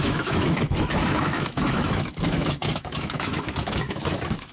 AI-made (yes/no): yes